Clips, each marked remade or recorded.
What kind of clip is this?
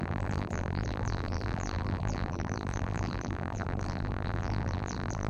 remade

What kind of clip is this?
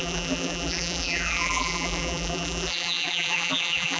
remade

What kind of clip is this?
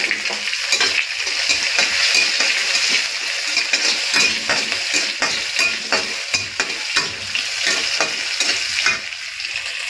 recorded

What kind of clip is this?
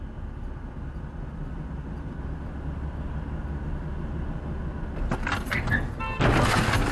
recorded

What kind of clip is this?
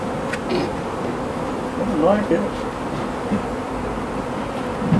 recorded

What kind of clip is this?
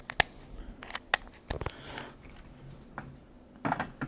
recorded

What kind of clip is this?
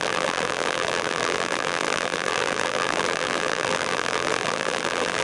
remade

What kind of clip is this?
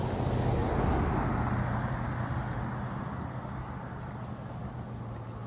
recorded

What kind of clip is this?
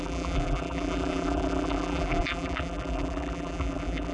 remade